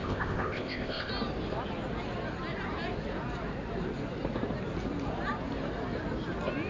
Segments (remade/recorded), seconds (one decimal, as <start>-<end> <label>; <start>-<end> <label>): 0.0-1.1 remade; 1.1-6.7 recorded